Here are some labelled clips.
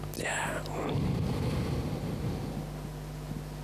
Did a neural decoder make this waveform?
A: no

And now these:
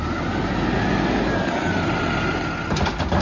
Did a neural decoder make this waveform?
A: no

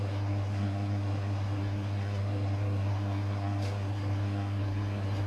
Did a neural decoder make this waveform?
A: yes